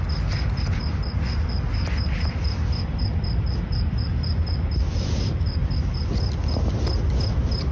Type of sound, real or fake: real